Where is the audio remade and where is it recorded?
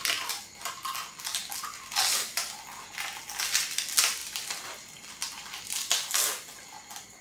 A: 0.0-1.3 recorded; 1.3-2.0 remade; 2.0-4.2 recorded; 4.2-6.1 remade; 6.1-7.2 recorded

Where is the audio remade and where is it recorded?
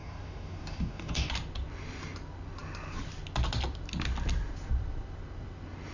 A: 0.0-1.3 remade; 1.3-5.9 recorded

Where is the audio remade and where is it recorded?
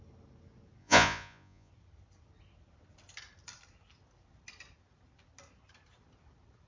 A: 0.0-0.8 recorded; 0.8-1.7 remade; 1.7-6.7 recorded